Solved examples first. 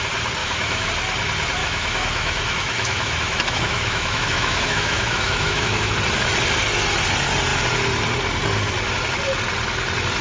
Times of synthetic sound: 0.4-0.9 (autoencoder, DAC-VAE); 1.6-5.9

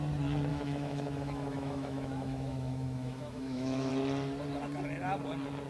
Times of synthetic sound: 0.5-3.9 (autoencoder, DAC-VAE)

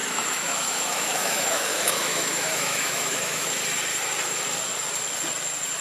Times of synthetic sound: 0.0-3.5 (autoencoder, DAC-VAE)

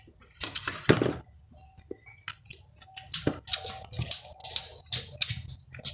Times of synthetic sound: none